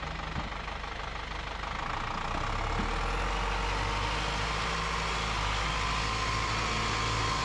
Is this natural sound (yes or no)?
yes